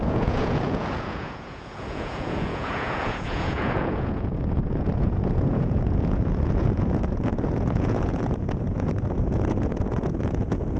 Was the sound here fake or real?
fake